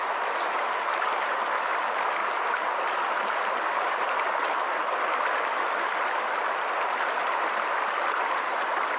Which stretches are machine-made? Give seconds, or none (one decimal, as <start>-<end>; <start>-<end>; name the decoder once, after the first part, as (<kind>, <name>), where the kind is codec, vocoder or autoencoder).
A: none